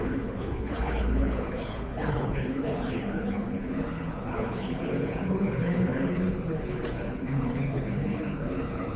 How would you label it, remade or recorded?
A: remade